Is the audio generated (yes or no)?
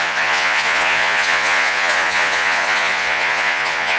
yes